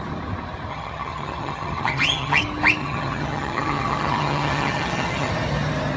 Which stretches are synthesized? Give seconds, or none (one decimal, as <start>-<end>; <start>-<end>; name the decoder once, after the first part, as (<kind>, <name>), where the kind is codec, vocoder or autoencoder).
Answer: 0.7-2.4 (vocoder, HiFi-GAN); 2.8-5.3